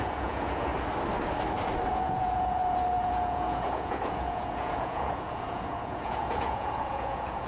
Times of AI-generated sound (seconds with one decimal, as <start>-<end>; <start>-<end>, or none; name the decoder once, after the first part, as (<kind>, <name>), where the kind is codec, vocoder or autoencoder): 0.0-0.7 (vocoder, Vocos); 1.9-7.5